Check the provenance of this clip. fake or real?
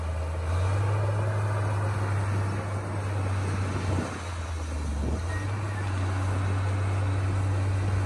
real